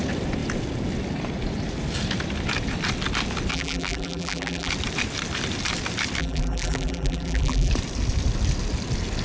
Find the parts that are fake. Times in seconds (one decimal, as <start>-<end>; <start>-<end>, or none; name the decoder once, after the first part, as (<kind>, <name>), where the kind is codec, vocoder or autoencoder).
3.5-4.7 (vocoder, BigVGAN v2); 6.2-7.7

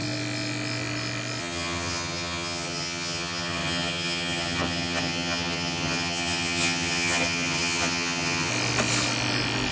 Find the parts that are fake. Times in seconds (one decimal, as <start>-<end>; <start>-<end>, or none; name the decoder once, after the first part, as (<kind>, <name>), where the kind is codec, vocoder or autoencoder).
1.4-8.5 (vocoder, HiFi-GAN)

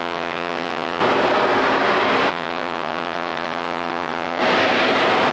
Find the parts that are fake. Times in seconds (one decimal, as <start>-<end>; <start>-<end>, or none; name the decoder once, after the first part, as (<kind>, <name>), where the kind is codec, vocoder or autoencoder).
0.0-1.0 (vocoder, HiFi-GAN); 2.3-4.4

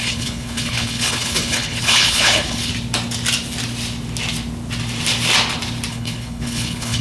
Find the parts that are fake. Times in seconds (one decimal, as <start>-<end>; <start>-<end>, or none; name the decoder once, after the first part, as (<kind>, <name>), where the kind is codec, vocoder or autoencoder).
0.0-2.7 (codec, HILCodec); 5.9-7.0

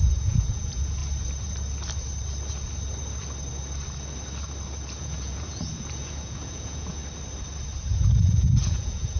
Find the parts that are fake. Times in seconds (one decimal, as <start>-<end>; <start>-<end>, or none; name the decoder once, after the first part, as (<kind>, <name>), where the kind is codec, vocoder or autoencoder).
0.0-1.0 (vocoder, Vocos); 5.0-7.0; 8.2-9.2